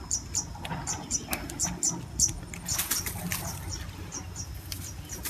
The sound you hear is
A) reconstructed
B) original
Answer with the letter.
B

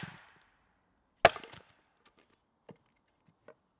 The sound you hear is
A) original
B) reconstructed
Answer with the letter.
A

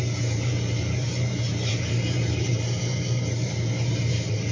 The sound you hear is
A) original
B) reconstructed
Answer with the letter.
B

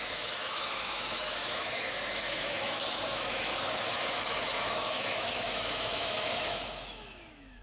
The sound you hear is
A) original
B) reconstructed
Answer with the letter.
B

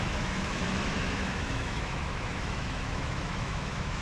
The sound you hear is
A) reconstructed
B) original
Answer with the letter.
A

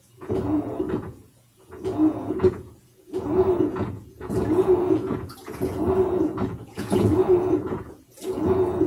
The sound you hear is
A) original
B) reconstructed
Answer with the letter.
B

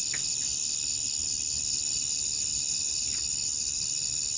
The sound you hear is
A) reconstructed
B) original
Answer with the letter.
B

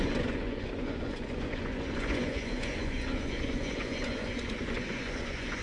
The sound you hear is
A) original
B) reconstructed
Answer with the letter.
B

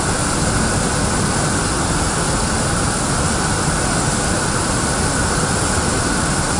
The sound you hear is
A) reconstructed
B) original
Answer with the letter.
B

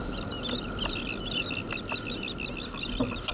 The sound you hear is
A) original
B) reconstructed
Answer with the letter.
A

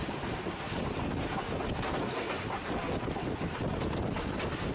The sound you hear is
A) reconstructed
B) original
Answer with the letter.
B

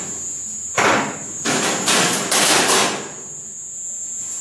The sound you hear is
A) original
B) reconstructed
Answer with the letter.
A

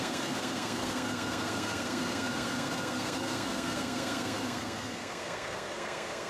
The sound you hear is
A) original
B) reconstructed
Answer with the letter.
B